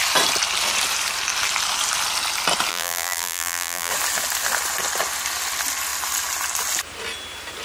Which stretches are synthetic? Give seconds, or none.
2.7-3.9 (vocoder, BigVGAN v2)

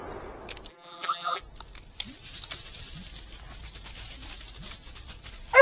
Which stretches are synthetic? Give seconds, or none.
0.7-1.4 (vocoder, BigVGAN v2)